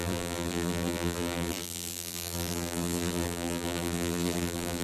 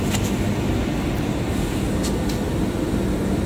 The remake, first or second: first